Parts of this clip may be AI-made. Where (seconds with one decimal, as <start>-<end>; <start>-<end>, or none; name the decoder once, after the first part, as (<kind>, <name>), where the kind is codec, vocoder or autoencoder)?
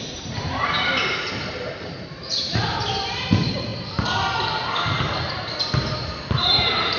0.0-3.7 (vocoder, BigVGAN v2); 5.3-7.0